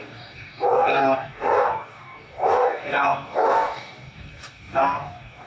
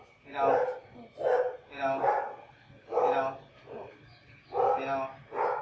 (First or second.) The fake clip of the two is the first